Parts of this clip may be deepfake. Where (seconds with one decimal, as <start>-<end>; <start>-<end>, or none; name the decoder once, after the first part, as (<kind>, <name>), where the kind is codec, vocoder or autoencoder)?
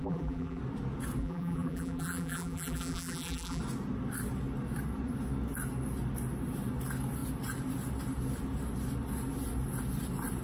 0.0-0.6 (vocoder, BigVGAN v2); 1.2-3.6